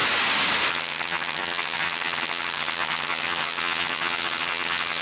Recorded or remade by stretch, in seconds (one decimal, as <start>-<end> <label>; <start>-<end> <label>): 0.0-0.7 recorded; 0.7-5.0 remade